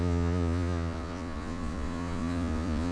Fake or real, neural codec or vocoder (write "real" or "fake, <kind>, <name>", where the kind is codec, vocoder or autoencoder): fake, vocoder, Vocos